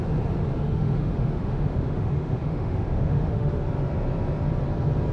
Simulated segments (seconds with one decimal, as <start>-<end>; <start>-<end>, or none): 0.5-3.6